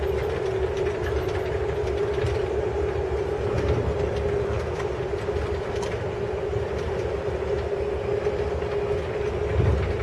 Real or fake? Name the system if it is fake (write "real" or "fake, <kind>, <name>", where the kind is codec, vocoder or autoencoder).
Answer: real